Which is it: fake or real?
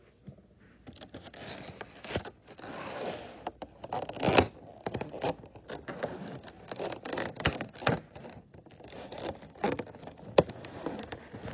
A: real